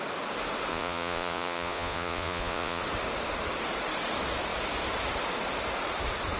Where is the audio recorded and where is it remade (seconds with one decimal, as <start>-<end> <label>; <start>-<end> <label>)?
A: 0.0-0.7 recorded; 0.7-2.8 remade; 2.8-6.4 recorded